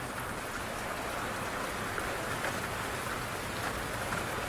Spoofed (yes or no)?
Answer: no